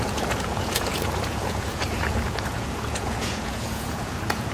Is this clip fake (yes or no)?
yes